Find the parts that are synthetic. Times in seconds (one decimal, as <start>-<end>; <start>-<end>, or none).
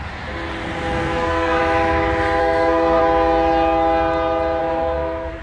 1.0-1.6; 2.4-3.0; 4.6-5.4